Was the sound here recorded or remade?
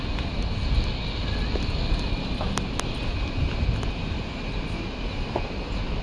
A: recorded